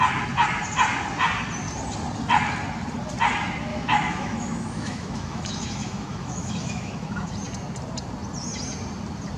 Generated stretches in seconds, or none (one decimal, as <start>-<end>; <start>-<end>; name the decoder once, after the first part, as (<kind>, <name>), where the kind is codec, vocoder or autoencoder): 3.7-7.3 (autoencoder, DAC-VAE)